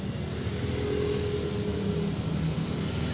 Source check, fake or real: real